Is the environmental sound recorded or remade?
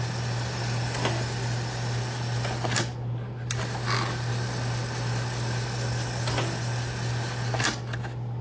recorded